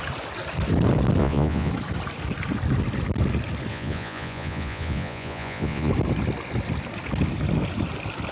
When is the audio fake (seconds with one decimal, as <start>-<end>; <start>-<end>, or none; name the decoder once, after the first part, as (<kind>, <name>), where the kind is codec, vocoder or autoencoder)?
1.2-1.7 (vocoder, Vocos); 3.7-5.9